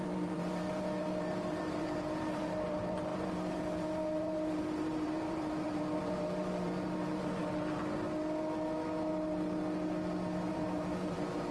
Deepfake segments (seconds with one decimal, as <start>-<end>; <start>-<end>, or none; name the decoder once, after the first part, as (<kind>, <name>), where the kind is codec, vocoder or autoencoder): 0.0-7.4 (vocoder, BigVGAN v2); 10.5-11.5